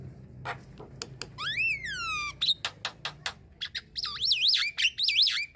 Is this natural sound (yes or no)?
yes